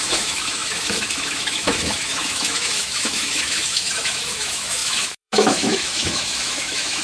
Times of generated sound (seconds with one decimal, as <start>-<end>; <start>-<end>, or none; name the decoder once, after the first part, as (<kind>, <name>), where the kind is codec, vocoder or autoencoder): 0.0-7.0 (autoencoder, DAC-VAE)